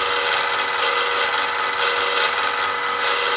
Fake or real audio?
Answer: real